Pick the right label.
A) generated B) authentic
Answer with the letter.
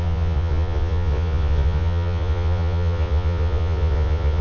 A